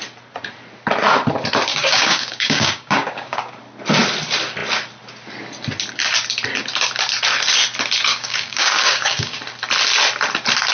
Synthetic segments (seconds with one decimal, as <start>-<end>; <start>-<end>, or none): 1.7-3.5; 8.1-9.4